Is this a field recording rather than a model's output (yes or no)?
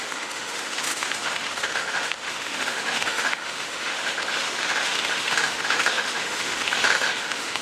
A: no